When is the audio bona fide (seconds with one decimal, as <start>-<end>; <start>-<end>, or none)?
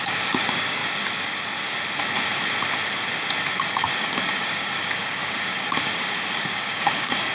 0.8-3.5